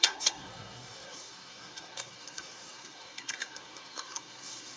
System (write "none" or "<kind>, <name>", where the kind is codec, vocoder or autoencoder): codec, SNAC